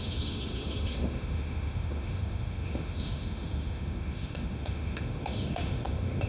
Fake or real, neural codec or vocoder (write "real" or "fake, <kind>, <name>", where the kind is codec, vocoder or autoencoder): fake, autoencoder, DAC-VAE